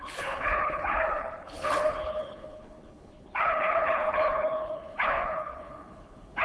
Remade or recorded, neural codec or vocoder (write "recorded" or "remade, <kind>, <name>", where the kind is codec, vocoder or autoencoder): remade, codec, HILCodec